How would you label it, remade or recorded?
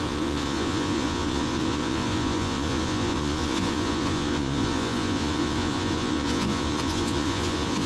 remade